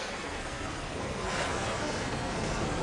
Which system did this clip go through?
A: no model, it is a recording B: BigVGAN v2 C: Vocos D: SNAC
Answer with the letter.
D